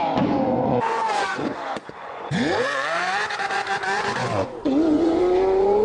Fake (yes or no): yes